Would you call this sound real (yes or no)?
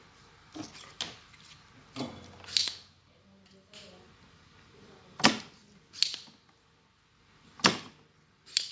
yes